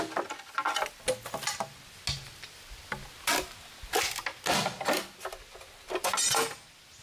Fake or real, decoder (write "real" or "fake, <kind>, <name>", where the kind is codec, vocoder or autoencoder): real